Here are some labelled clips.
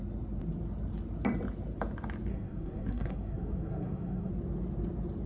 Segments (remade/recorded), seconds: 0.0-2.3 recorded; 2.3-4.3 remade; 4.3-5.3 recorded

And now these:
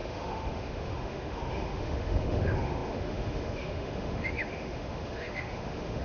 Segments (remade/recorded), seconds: 0.0-6.0 remade

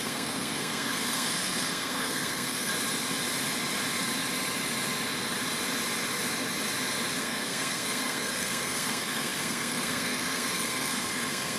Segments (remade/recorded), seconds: 0.0-2.7 remade; 2.7-7.2 recorded; 7.2-11.6 remade

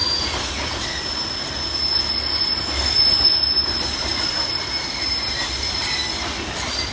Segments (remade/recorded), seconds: 0.0-6.9 recorded